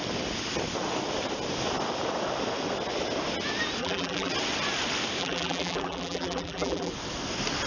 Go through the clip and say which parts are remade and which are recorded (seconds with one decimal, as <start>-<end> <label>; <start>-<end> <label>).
0.0-3.8 recorded; 3.8-4.3 remade; 4.3-5.2 recorded; 5.2-6.9 remade; 6.9-7.7 recorded

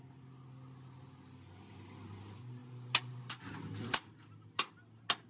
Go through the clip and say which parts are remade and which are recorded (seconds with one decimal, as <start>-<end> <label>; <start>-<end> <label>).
0.0-5.3 recorded

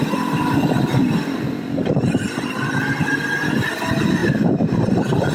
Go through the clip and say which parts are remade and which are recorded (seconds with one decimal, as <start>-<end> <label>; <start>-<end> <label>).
0.0-0.9 recorded; 0.9-3.6 remade; 3.6-5.3 recorded

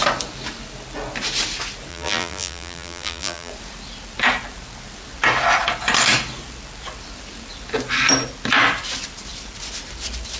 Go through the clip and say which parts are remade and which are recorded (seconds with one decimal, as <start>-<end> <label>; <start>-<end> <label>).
0.0-1.9 recorded; 1.9-3.5 remade; 3.5-10.4 recorded

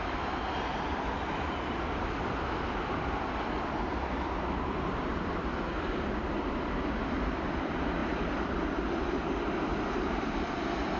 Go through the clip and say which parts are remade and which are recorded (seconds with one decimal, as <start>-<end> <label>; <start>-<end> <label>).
0.0-11.0 remade

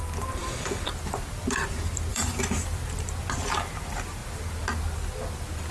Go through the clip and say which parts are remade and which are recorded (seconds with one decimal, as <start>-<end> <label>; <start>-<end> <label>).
0.0-2.1 recorded; 2.1-2.8 remade; 2.8-5.7 recorded